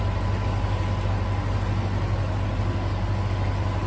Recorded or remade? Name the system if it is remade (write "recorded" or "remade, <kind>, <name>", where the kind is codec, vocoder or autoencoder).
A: recorded